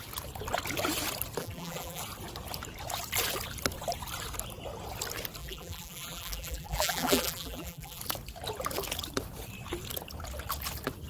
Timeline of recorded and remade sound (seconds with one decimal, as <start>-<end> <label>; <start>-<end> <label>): 0.0-1.4 recorded; 1.4-2.0 remade; 2.0-5.4 recorded; 5.4-8.0 remade; 8.0-11.1 recorded